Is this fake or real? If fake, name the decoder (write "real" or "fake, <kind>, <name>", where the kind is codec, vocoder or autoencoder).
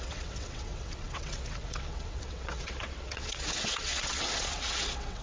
fake, vocoder, WaveNeXt